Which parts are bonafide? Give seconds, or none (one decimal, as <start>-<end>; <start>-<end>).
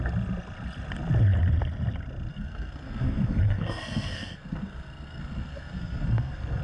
0.0-2.3